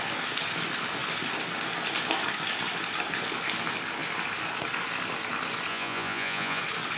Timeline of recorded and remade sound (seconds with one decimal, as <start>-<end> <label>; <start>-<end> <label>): 0.0-5.7 recorded; 5.7-6.6 remade; 6.6-7.0 recorded